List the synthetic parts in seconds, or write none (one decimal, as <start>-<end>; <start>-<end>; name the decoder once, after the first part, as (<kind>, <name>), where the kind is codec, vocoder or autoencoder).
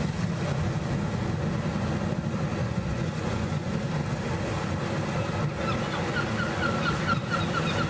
2.6-3.7 (vocoder, Vocos)